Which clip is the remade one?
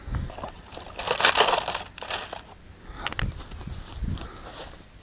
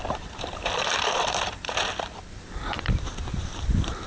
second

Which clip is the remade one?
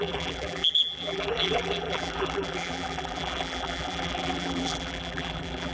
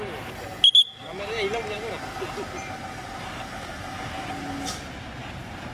first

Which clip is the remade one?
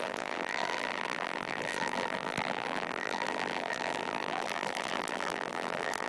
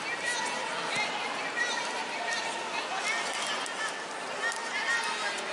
first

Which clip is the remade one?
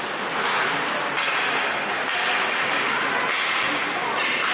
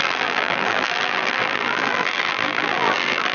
second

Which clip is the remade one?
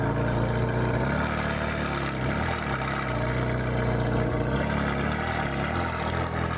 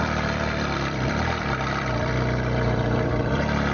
second